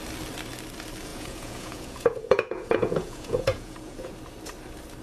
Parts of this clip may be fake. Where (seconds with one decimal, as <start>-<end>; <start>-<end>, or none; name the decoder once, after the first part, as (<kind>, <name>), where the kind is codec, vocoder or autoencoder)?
1.1-4.1 (vocoder, Vocos)